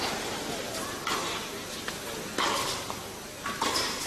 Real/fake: real